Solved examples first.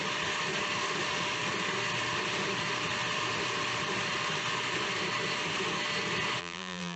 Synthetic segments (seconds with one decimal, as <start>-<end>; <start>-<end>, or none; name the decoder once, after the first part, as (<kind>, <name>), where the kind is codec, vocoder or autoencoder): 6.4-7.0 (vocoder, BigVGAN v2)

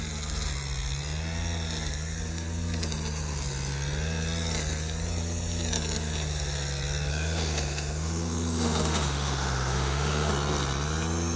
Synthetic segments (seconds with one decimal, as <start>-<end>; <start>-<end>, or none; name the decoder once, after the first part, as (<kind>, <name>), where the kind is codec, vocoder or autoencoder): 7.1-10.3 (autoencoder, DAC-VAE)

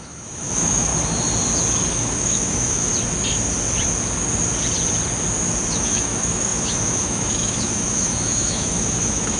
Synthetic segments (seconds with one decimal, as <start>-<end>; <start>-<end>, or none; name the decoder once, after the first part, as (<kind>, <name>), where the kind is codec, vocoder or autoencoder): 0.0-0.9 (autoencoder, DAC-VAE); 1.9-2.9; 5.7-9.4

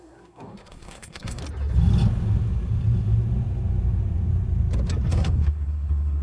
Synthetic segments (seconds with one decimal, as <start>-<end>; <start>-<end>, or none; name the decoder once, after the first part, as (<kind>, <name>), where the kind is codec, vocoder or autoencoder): 0.0-1.4 (codec, SNAC); 5.1-6.2